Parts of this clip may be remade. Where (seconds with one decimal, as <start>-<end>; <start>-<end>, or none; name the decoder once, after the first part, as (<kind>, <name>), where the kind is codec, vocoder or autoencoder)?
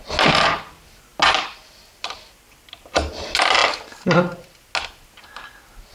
3.6-4.6 (vocoder, BigVGAN v2)